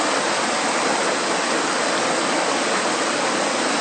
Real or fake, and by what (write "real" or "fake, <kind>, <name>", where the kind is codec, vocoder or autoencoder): real